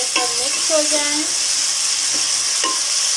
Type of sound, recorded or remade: recorded